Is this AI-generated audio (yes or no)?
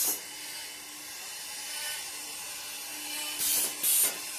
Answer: no